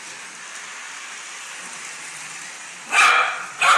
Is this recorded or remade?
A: recorded